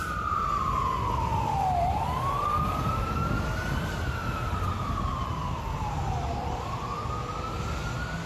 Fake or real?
real